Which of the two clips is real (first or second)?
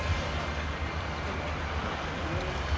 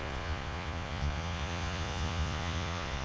first